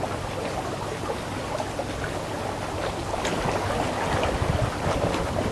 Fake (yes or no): no